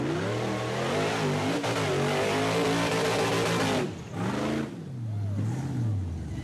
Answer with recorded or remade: recorded